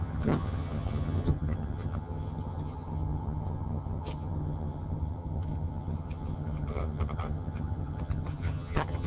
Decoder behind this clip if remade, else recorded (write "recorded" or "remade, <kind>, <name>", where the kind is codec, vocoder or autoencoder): remade, vocoder, HiFi-GAN